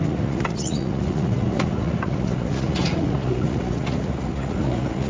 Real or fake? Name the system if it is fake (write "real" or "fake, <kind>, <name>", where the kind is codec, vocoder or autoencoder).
fake, vocoder, Vocos